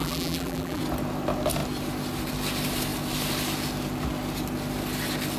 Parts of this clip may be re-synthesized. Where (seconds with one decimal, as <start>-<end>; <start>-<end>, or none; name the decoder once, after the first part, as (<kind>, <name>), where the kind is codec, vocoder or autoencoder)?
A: 0.0-0.8 (vocoder, BigVGAN v2)